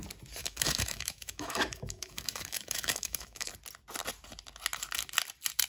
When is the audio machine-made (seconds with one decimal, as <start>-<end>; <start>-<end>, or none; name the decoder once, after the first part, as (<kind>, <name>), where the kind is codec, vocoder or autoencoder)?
0.4-3.5 (autoencoder, DAC-VAE)